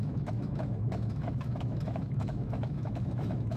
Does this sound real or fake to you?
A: fake